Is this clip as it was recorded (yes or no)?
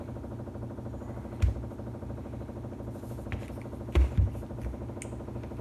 yes